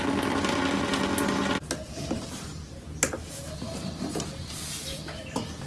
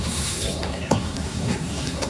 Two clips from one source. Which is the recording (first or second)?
first